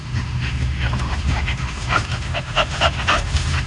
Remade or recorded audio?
remade